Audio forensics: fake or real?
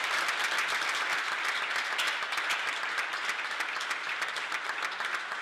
real